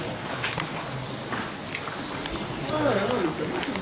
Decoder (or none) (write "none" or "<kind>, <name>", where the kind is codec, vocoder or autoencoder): none